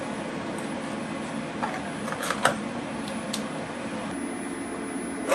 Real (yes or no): yes